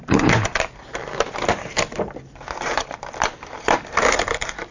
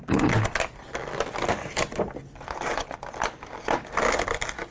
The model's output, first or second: first